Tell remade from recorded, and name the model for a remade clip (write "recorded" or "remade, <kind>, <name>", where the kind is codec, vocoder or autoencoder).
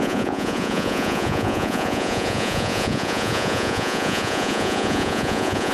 remade, vocoder, Vocos